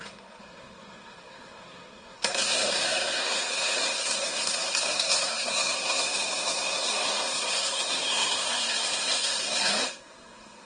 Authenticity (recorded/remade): remade